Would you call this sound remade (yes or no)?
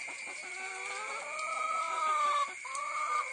no